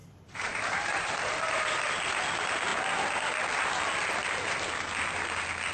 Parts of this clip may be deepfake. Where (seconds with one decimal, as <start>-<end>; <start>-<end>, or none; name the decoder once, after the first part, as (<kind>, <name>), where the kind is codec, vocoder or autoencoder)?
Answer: 0.0-1.8 (vocoder, BigVGAN v2)